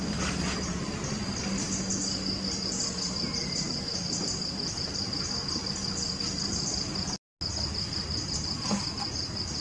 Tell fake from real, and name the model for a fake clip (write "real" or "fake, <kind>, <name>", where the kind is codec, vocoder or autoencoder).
real